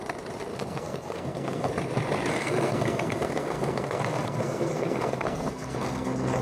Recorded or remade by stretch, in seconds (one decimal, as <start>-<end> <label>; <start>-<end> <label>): 0.0-0.5 recorded; 0.5-1.7 remade; 1.7-2.3 recorded; 2.3-6.4 remade